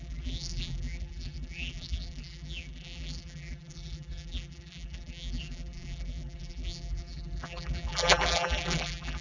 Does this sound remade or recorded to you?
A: remade